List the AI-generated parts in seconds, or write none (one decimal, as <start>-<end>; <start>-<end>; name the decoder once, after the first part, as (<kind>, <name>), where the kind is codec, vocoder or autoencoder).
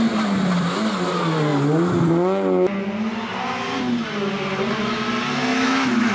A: 5.5-6.1 (autoencoder, DAC-VAE)